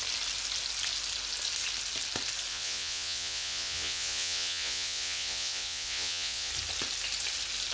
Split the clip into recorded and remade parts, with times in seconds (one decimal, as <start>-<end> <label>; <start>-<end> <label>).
0.0-2.5 recorded; 2.5-6.5 remade; 6.5-7.7 recorded